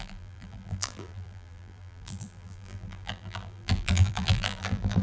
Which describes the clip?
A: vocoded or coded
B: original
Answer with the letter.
A